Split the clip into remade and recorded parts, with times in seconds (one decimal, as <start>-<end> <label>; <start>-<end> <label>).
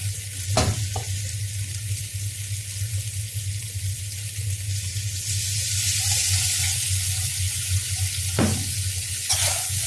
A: 0.0-6.2 recorded; 6.2-9.9 remade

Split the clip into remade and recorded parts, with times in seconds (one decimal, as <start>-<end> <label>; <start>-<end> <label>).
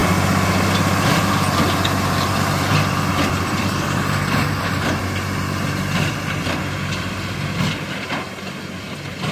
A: 0.0-3.1 recorded; 3.1-9.3 remade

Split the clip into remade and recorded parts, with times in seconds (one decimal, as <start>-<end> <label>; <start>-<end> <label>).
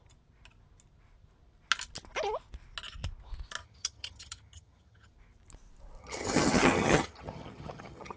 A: 0.0-3.6 recorded; 3.6-5.1 remade; 5.1-6.0 recorded; 6.0-8.2 remade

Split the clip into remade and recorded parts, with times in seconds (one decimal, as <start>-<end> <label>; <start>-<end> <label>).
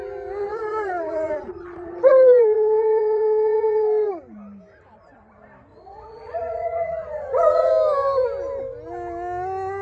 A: 0.0-0.4 recorded; 0.4-4.1 remade; 4.1-5.7 recorded; 5.7-7.7 remade; 7.7-9.8 recorded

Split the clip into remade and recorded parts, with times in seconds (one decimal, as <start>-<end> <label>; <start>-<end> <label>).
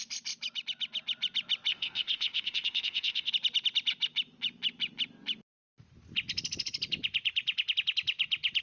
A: 0.0-1.7 recorded; 1.7-3.3 remade; 3.3-8.6 recorded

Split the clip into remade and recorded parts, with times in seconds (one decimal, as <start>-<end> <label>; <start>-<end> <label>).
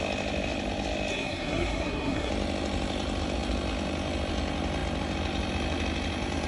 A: 0.0-1.1 recorded; 1.1-2.3 remade; 2.3-6.5 recorded